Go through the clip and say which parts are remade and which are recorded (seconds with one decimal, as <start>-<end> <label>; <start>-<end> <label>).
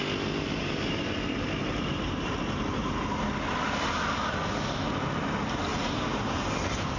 0.0-0.6 recorded; 0.6-3.3 remade; 3.3-5.7 recorded; 5.7-6.5 remade; 6.5-7.0 recorded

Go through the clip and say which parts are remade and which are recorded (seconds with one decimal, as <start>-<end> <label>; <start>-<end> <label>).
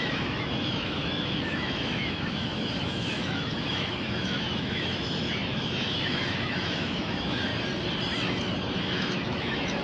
0.0-7.5 remade; 7.5-8.8 recorded; 8.8-9.8 remade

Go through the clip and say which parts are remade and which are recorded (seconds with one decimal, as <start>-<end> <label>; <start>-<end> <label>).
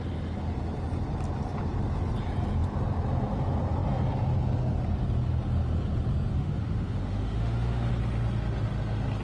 0.0-6.3 recorded; 6.3-7.9 remade; 7.9-9.2 recorded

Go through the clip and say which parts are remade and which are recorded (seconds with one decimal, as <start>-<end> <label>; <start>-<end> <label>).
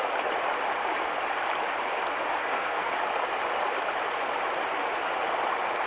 0.0-2.4 recorded; 2.4-2.9 remade; 2.9-5.9 recorded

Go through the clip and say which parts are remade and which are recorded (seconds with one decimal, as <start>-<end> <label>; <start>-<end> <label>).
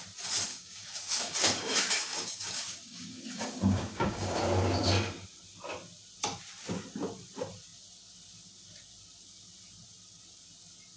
0.0-0.5 recorded; 0.5-4.4 remade; 4.4-11.0 recorded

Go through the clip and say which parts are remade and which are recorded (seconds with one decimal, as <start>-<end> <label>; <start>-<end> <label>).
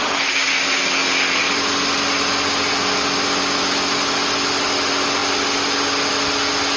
0.0-6.8 recorded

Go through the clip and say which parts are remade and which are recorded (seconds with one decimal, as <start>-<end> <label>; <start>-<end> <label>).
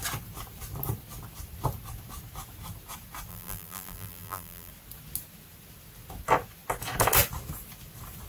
0.0-3.3 recorded; 3.3-4.7 remade; 4.7-8.3 recorded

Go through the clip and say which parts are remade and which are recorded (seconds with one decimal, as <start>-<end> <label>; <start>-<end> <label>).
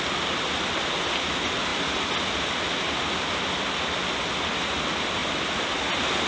0.0-6.3 recorded